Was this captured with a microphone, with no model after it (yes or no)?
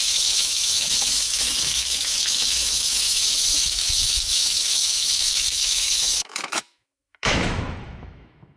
no